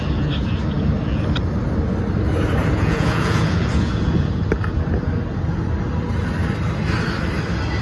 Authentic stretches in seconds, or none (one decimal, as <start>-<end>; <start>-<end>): 0.0-2.6; 4.3-7.8